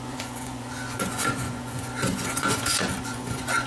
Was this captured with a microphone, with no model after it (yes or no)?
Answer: no